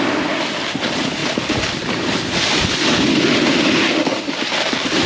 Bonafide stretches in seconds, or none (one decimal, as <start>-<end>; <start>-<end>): 0.0-5.1